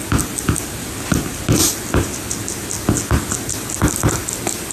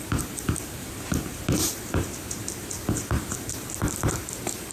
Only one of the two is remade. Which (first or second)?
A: second